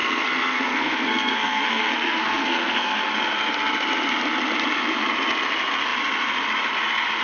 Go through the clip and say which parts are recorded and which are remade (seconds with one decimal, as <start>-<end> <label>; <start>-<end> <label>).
0.0-3.1 remade; 3.1-7.2 recorded